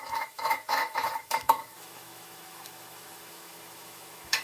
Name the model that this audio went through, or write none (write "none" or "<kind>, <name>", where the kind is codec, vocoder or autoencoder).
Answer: autoencoder, DAC-VAE